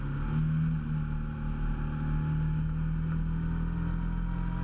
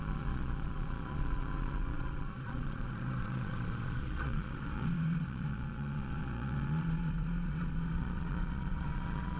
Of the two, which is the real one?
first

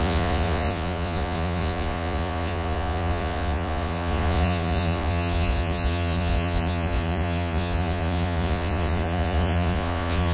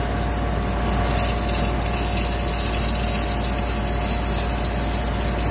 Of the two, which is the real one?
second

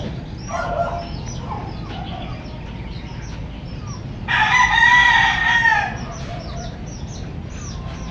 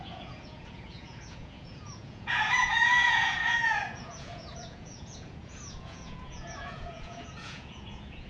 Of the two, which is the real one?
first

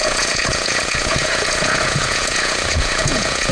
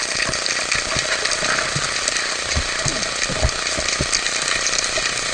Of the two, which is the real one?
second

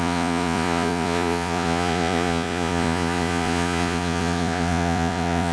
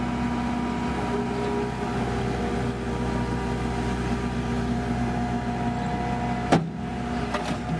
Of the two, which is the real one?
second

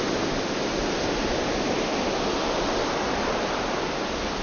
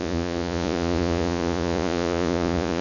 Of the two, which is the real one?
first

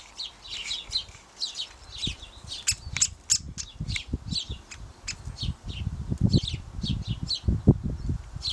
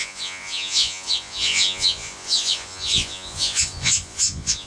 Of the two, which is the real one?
first